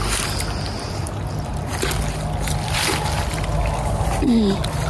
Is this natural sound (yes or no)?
yes